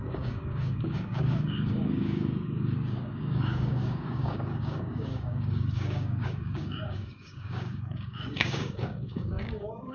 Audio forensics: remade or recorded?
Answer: remade